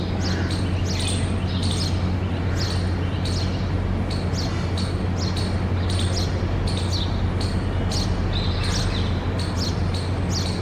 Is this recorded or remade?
recorded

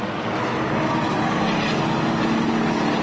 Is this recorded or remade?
recorded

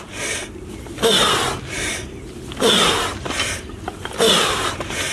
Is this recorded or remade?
recorded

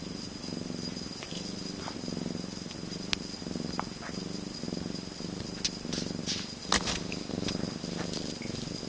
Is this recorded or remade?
recorded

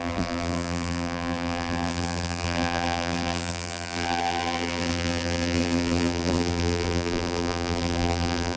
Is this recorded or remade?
remade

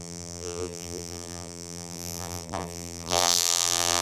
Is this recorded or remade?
remade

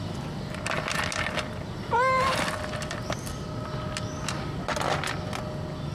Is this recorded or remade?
recorded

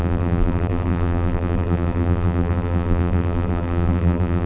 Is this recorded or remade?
remade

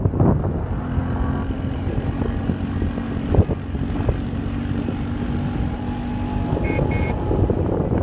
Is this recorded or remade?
recorded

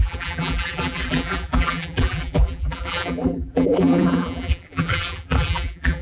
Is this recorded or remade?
remade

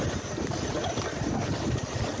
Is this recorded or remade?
recorded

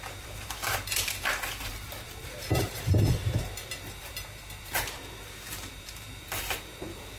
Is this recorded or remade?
remade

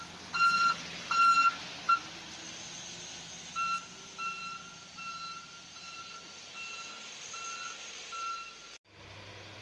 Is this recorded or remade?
recorded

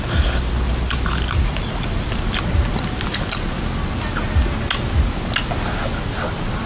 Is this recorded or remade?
recorded